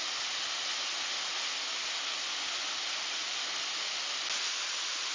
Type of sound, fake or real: real